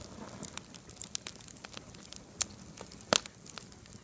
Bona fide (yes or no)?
yes